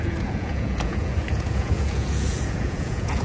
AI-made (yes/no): yes